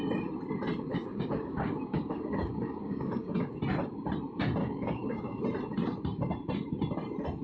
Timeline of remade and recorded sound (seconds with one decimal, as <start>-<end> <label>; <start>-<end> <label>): 0.0-0.9 recorded; 0.9-3.6 remade; 3.6-4.6 recorded; 4.6-5.4 remade; 5.4-7.4 recorded